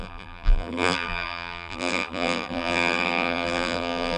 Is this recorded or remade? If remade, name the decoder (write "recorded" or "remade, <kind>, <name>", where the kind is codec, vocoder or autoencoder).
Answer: remade, vocoder, BigVGAN v2